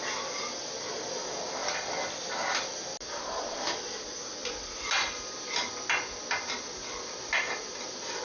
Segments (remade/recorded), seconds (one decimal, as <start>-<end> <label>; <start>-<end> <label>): 0.0-4.4 recorded; 4.4-5.7 remade; 5.7-8.2 recorded